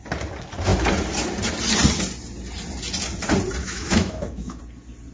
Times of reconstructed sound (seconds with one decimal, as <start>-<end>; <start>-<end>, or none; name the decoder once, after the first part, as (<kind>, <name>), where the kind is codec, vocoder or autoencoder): 3.6-4.6 (autoencoder, DAC-VAE)